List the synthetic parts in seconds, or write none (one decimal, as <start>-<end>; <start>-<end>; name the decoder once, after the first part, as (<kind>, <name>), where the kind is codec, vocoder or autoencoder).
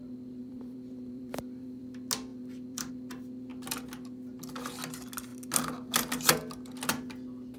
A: 0.4-1.8 (vocoder, BigVGAN v2); 2.3-2.9